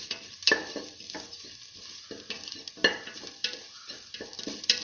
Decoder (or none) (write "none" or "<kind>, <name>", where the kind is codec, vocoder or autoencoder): none